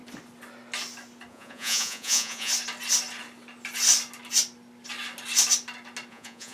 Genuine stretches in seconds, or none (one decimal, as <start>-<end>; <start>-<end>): 0.0-1.3; 2.5-6.1